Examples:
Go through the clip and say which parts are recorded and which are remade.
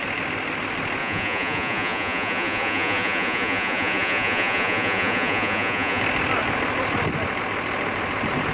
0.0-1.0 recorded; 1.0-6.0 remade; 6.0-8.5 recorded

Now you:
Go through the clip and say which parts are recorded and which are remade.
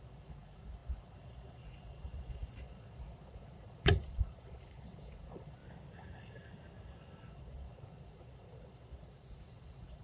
0.0-5.6 remade; 5.6-7.3 recorded; 7.3-10.0 remade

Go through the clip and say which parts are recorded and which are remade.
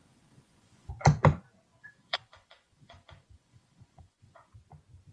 0.0-0.9 remade; 0.9-1.8 recorded; 1.8-4.5 remade; 4.5-5.1 recorded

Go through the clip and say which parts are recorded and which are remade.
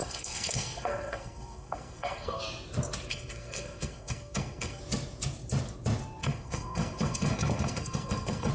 0.0-2.4 remade; 2.4-3.1 recorded; 3.1-4.8 remade; 4.8-6.2 recorded; 6.2-8.5 remade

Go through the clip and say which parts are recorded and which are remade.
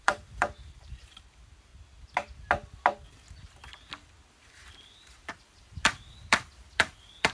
0.0-1.7 remade; 1.7-4.3 recorded; 4.3-7.3 remade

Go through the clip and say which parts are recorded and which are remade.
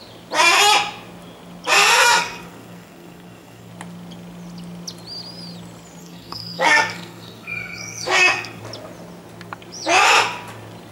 0.0-2.0 recorded; 2.0-3.7 remade; 3.7-6.0 recorded; 6.0-8.6 remade; 8.6-10.9 recorded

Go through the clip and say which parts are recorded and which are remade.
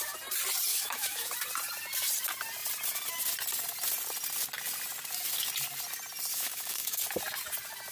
0.0-0.7 recorded; 0.7-1.3 remade; 1.3-6.3 recorded; 6.3-7.0 remade; 7.0-7.9 recorded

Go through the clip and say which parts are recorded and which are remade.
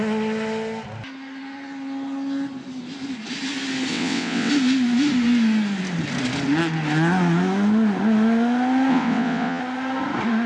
0.0-3.9 recorded; 3.9-4.5 remade; 4.5-8.9 recorded; 8.9-9.6 remade; 9.6-10.5 recorded